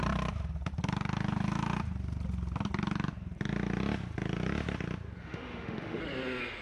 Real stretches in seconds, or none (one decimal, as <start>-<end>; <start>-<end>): 0.0-5.2; 6.0-6.6